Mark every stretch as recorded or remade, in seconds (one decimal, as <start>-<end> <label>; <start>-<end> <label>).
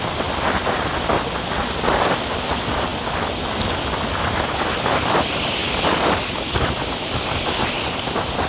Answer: 0.0-5.6 recorded; 5.6-6.7 remade; 6.7-8.5 recorded